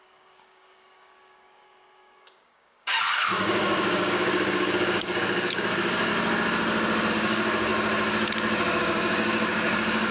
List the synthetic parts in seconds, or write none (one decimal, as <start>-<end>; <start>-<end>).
0.0-6.1; 7.1-7.7; 8.8-10.1